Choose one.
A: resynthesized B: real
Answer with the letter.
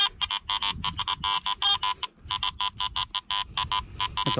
B